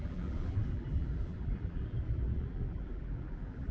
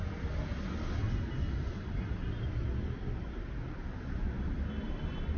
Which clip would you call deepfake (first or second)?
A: first